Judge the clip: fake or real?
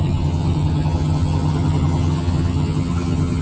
fake